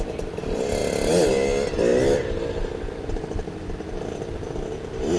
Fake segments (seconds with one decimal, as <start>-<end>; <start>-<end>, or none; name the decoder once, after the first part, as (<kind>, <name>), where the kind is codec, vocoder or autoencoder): none